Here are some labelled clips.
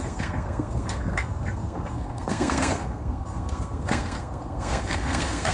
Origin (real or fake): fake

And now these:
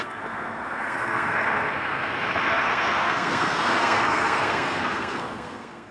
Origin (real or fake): fake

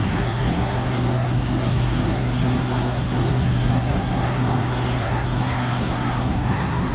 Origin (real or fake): fake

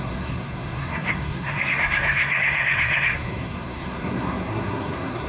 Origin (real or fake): fake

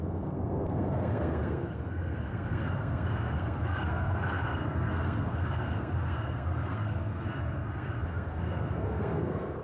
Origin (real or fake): fake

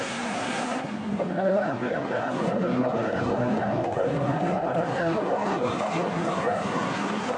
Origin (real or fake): fake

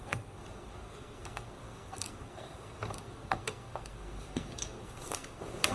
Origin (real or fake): fake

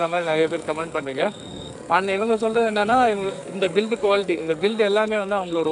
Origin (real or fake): fake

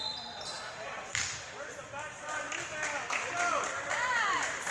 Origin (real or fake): real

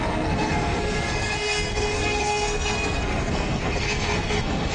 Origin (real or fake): fake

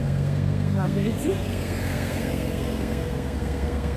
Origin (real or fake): fake